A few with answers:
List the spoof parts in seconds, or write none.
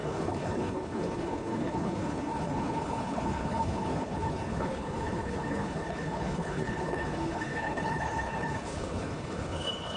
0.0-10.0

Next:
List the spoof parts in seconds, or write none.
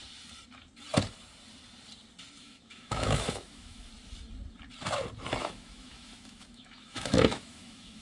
2.4-3.9; 5.4-8.0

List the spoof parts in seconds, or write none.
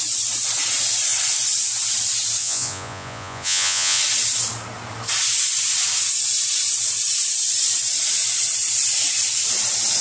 2.4-4.0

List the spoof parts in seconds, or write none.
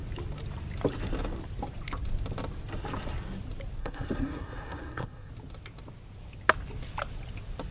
3.8-5.3